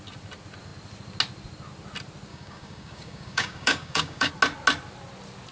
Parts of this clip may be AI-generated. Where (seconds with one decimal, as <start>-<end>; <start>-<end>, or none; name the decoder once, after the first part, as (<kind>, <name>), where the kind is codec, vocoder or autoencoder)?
2.3-4.3 (codec, DAC)